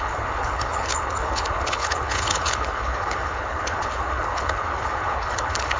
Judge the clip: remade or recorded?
remade